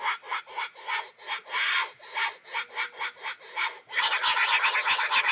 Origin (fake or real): real